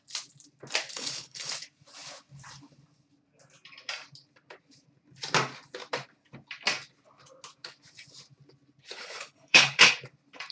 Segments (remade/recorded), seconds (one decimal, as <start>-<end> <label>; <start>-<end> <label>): 0.0-0.9 recorded; 0.9-1.5 remade; 1.5-8.9 recorded; 8.9-9.9 remade; 9.9-10.5 recorded